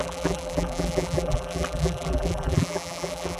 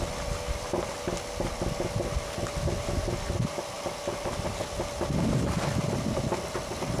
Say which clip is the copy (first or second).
first